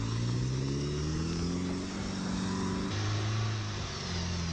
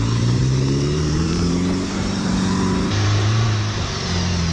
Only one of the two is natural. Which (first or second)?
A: first